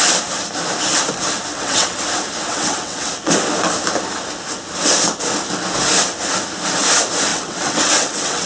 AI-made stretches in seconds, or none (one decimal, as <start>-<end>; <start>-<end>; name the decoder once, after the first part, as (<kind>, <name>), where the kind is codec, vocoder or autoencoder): 1.5-2.0 (vocoder, WaveNeXt); 2.5-3.1; 7.3-8.5